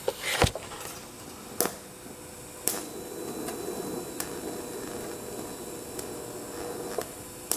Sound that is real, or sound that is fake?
real